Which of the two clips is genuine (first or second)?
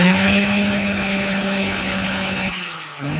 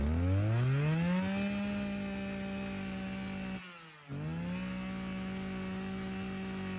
second